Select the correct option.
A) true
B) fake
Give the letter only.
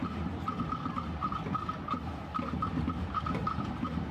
A